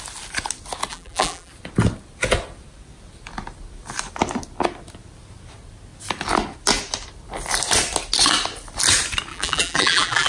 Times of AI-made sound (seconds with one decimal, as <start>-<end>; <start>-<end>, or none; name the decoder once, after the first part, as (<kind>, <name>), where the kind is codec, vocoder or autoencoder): 0.9-1.5 (vocoder, BigVGAN v2); 9.3-10.3